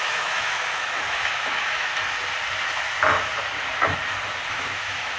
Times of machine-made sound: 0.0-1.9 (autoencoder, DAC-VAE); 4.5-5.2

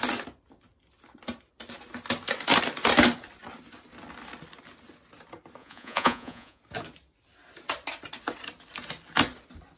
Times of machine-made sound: 5.6-6.6 (vocoder, Vocos)

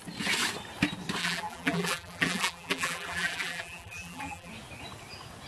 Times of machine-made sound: 1.2-4.5 (vocoder, BigVGAN v2)

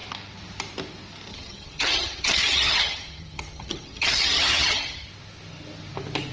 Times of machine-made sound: 1.3-5.1 (vocoder, HiFi-GAN)

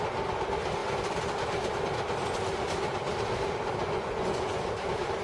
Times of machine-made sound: 3.8-4.6 (vocoder, Vocos)